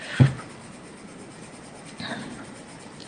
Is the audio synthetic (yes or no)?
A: no